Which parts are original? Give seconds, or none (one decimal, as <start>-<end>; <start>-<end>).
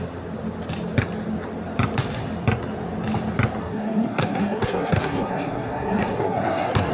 0.0-3.6